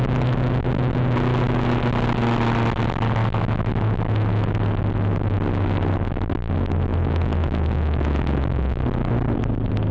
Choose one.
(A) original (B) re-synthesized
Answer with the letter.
A